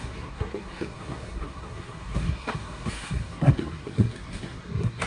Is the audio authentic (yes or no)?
no